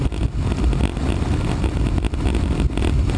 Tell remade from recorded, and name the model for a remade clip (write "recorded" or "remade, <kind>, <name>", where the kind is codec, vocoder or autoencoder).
recorded